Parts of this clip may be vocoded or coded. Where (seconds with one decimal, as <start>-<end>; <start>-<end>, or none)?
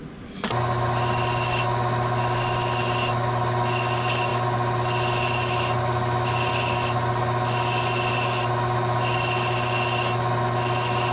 none